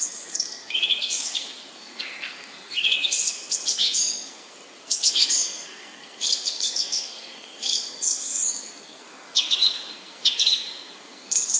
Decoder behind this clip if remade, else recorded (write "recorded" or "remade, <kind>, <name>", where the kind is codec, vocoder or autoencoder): remade, codec, SNAC